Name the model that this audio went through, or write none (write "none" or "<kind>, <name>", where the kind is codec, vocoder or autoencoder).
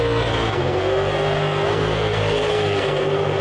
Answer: codec, SNAC